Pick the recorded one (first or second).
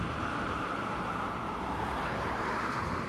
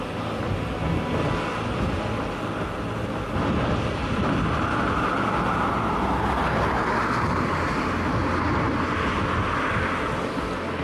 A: second